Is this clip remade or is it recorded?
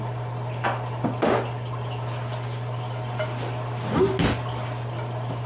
recorded